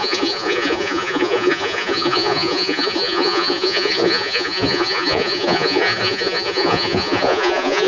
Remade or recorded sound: remade